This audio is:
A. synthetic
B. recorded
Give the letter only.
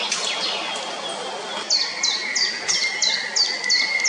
B